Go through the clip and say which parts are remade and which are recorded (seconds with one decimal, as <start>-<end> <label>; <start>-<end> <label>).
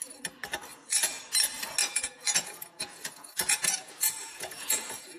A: 0.0-0.7 recorded; 0.7-1.2 remade; 1.2-1.8 recorded; 1.8-5.2 remade